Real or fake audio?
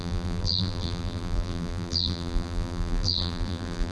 fake